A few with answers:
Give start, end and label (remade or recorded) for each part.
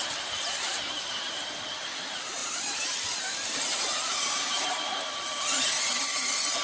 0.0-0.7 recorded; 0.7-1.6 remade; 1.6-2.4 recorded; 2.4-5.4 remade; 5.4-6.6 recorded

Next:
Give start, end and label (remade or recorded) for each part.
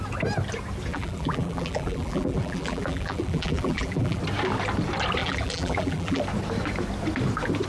0.0-0.9 recorded; 0.9-4.2 remade; 4.2-5.2 recorded; 5.2-6.2 remade; 6.2-7.7 recorded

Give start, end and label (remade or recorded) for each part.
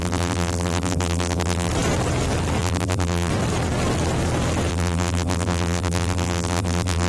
0.0-1.7 remade; 1.7-2.6 recorded; 2.6-3.3 remade; 3.3-4.7 recorded; 4.7-7.1 remade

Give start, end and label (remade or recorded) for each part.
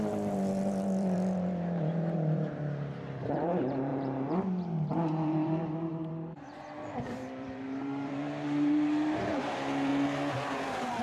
0.0-9.9 remade; 9.9-11.0 recorded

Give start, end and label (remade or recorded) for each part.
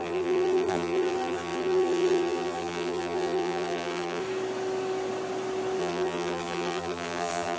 0.0-4.2 remade; 4.2-5.8 recorded; 5.8-7.6 remade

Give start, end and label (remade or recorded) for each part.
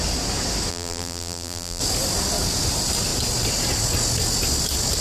0.0-0.7 recorded; 0.7-1.8 remade; 1.8-5.0 recorded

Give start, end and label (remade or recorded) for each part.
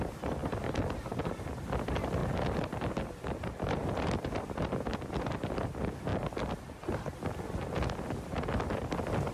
0.0-9.3 recorded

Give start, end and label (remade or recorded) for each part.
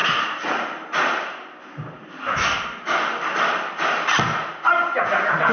0.0-1.6 remade; 1.6-5.5 recorded